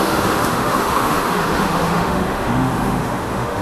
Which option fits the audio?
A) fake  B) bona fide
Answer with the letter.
A